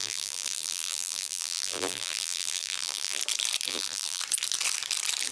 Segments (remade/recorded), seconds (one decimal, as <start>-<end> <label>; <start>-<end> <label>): 0.0-3.2 remade; 3.2-3.7 recorded; 3.7-4.2 remade; 4.2-5.3 recorded